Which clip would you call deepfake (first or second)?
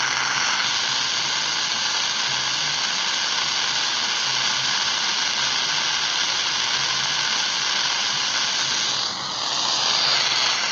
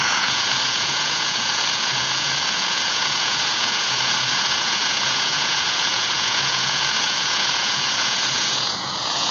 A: second